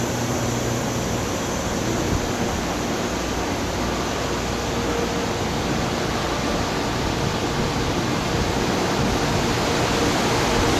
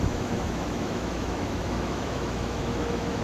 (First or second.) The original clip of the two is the first